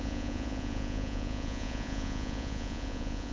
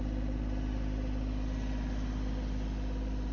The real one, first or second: second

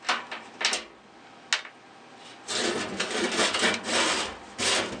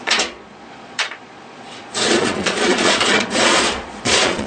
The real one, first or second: first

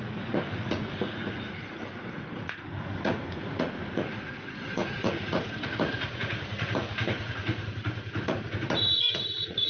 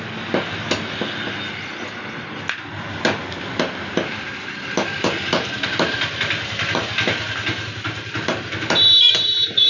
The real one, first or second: second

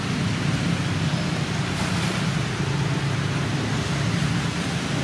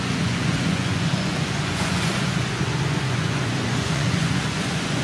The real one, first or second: first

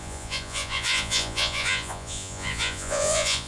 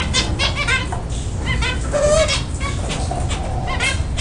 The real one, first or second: second